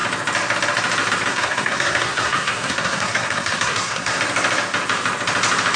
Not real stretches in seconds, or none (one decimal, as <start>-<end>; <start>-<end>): 1.3-4.2